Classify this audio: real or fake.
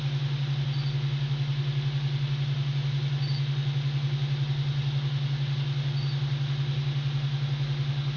real